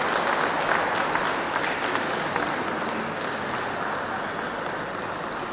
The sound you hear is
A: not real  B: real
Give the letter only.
B